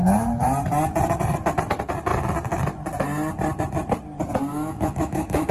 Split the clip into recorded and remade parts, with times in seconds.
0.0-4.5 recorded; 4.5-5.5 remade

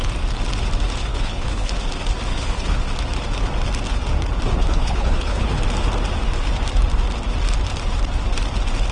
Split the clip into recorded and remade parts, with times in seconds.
0.0-1.1 recorded; 1.1-1.7 remade; 1.7-2.3 recorded; 2.3-2.8 remade; 2.8-4.6 recorded; 4.6-5.6 remade; 5.6-8.9 recorded

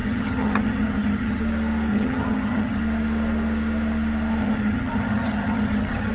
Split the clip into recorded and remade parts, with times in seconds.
0.0-1.4 remade; 1.4-1.9 recorded; 1.9-2.8 remade; 2.8-4.4 recorded; 4.4-6.1 remade

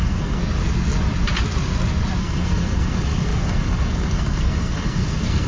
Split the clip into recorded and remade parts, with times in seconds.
0.0-0.4 remade; 0.4-2.2 recorded; 2.2-5.5 remade

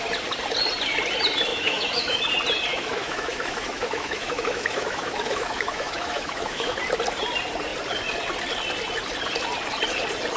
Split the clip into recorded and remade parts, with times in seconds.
0.0-1.5 recorded; 1.5-2.2 remade; 2.2-2.7 recorded; 2.7-6.8 remade; 6.8-10.4 recorded

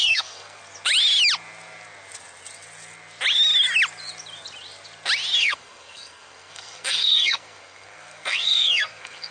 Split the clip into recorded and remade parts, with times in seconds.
0.0-0.6 remade; 0.6-5.4 recorded; 5.4-9.3 remade

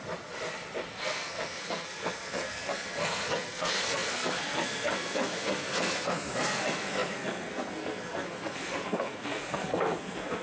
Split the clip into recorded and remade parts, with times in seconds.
0.0-0.9 recorded; 0.9-10.4 remade